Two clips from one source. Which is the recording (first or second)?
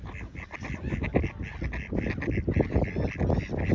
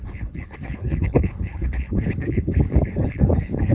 first